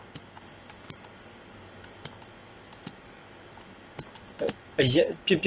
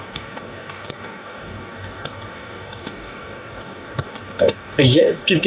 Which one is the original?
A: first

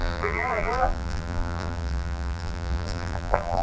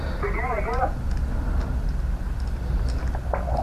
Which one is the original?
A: second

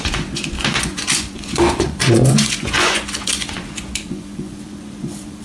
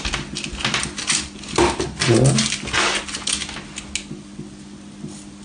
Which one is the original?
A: second